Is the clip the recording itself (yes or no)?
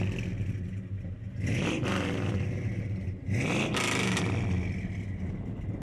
yes